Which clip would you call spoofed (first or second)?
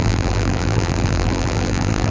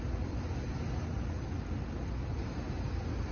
first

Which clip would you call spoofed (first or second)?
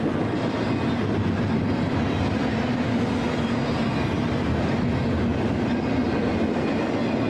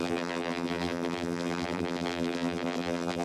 second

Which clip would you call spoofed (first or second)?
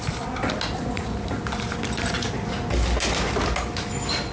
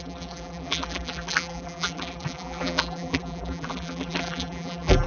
second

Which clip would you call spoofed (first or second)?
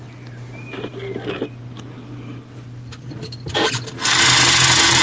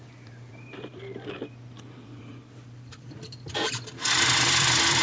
second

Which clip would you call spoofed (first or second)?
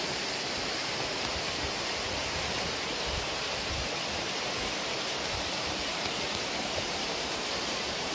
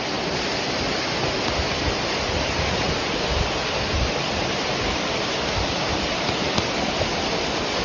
first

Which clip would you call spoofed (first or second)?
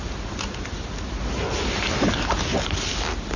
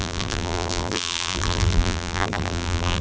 second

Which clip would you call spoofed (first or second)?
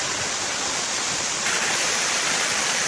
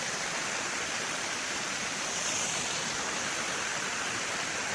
second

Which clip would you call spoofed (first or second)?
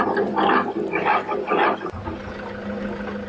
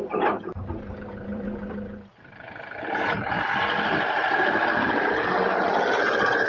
second